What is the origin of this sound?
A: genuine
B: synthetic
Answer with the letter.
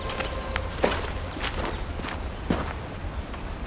A